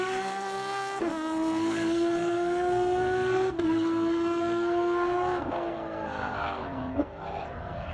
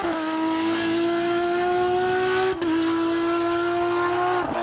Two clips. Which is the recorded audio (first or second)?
second